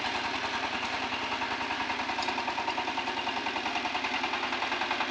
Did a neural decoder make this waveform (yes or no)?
no